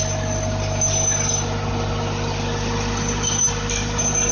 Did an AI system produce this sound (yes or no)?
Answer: no